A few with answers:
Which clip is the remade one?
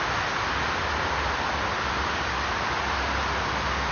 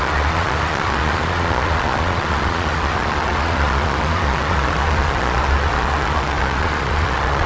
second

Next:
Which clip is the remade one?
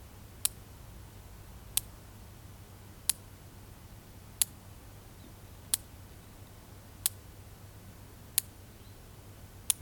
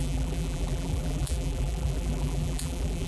second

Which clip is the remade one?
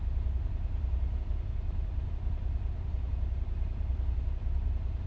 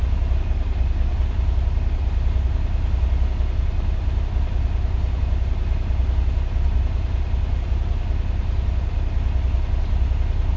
first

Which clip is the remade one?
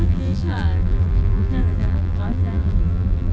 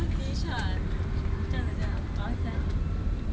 first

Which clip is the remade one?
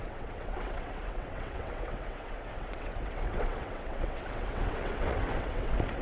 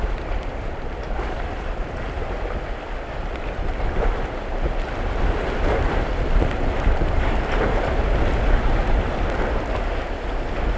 first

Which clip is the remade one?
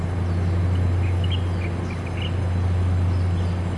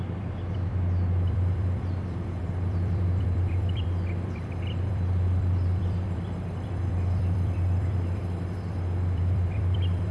second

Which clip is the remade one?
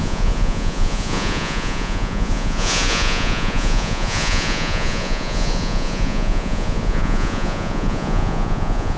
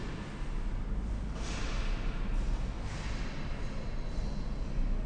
first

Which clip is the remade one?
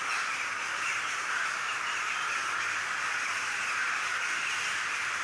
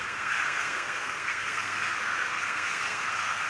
second